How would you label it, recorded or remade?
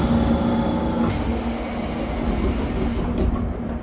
recorded